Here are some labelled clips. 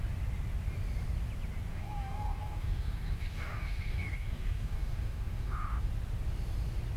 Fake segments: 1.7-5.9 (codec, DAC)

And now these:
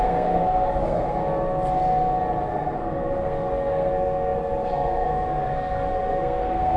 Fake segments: 0.0-1.2 (codec, SNAC); 2.5-6.8

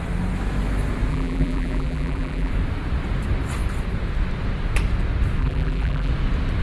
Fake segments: 1.1-2.5 (vocoder, BigVGAN v2); 5.4-6.1

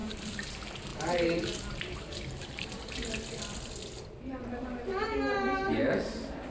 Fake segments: 0.0-0.5 (vocoder, BigVGAN v2); 0.9-2.8; 4.4-6.5

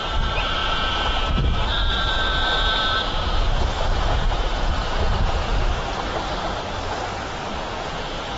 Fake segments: 0.6-5.6 (vocoder, Vocos); 7.5-8.4

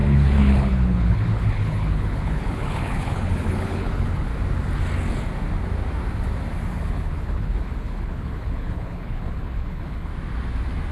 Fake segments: 0.0-4.3 (codec, HILCodec); 6.9-10.1

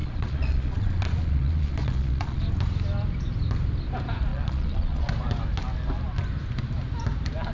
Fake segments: 0.0-2.4 (vocoder, Vocos); 4.3-5.1